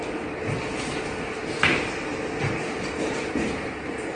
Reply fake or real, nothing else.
real